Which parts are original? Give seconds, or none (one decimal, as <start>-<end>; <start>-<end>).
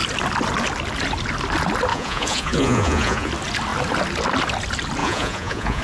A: 0.0-1.9; 3.3-5.0